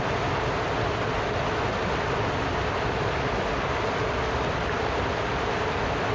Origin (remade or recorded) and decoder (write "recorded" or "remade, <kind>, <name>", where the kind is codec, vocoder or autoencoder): recorded